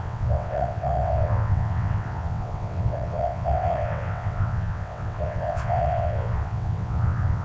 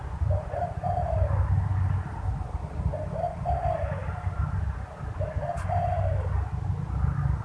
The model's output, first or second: first